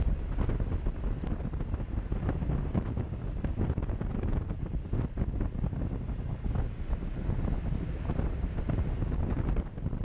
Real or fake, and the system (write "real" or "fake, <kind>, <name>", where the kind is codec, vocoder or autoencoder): real